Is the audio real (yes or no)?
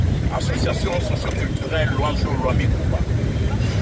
no